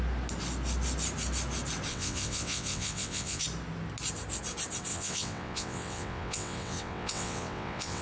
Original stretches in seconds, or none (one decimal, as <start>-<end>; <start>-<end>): 0.0-1.9; 3.4-4.9